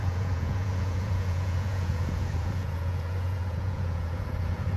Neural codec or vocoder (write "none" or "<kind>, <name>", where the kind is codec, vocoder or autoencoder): vocoder, Vocos